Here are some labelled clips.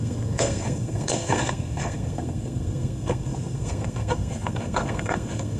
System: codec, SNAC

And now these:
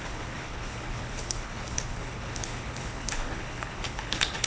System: codec, HILCodec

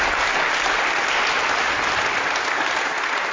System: none